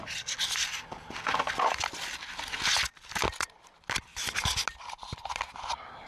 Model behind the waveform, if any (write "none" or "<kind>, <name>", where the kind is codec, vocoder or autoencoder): none